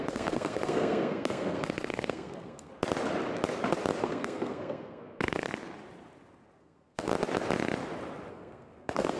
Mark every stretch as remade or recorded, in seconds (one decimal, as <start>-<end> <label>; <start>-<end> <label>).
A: 0.0-2.7 remade; 2.7-4.0 recorded; 4.0-5.5 remade; 5.5-6.6 recorded; 6.6-7.1 remade; 7.1-8.3 recorded; 8.3-9.2 remade